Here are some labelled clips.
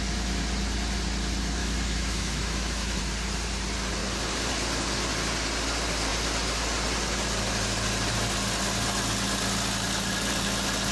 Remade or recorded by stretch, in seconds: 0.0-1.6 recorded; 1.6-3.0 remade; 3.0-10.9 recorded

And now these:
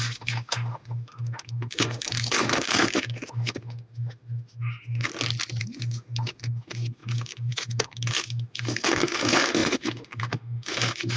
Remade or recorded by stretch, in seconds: 0.0-5.1 remade; 5.1-5.6 recorded; 5.6-11.2 remade

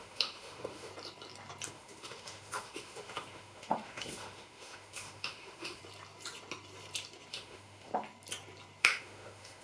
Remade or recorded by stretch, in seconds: 0.0-0.9 remade; 0.9-1.7 recorded; 1.7-5.8 remade; 5.8-7.3 recorded; 7.3-7.9 remade; 7.9-8.8 recorded; 8.8-9.6 remade

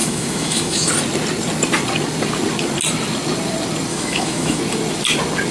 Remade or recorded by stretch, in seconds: 0.0-0.9 remade; 0.9-3.9 recorded; 3.9-4.6 remade; 4.6-5.5 recorded

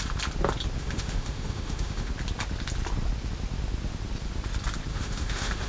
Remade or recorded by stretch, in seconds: 0.0-0.8 recorded; 0.8-2.1 remade; 2.1-4.9 recorded; 4.9-5.7 remade